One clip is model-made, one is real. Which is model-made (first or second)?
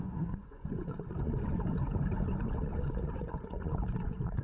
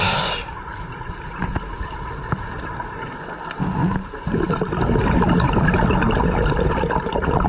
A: first